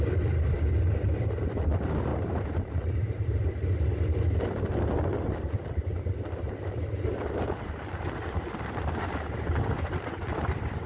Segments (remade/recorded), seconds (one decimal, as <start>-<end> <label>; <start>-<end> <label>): 0.0-2.1 recorded; 2.1-3.5 remade; 3.5-10.9 recorded